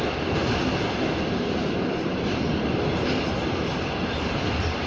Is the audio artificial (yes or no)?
no